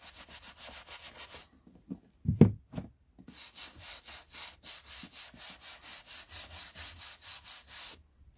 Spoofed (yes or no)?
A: no